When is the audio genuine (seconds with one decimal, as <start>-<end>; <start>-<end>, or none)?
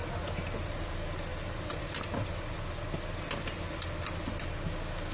0.0-5.1